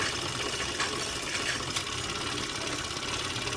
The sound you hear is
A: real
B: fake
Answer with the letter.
A